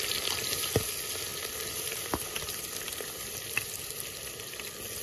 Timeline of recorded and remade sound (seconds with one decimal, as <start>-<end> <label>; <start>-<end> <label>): 0.0-1.3 recorded; 1.3-4.3 remade; 4.3-5.0 recorded